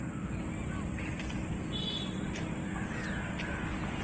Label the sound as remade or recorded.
recorded